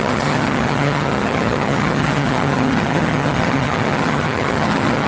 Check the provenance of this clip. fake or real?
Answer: fake